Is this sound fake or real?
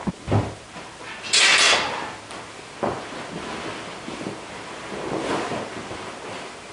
real